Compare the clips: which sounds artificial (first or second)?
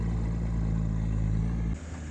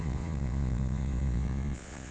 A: second